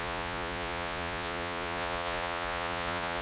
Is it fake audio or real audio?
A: fake